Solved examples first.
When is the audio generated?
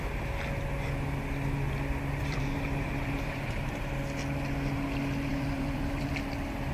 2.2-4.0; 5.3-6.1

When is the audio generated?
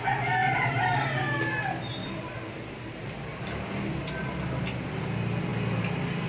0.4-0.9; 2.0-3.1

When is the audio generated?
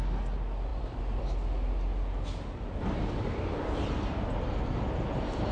0.7-1.2; 2.8-4.3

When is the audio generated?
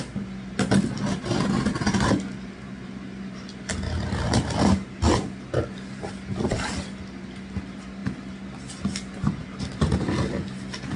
none